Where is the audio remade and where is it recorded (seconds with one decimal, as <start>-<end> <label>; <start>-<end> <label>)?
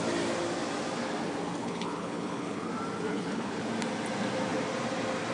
0.0-1.6 recorded; 1.6-2.7 remade; 2.7-3.1 recorded; 3.1-3.6 remade; 3.6-5.3 recorded